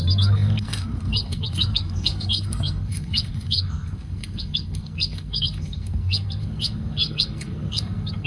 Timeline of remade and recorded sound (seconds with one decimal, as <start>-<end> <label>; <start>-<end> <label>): 0.0-8.3 remade